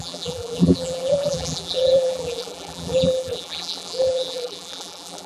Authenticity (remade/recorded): remade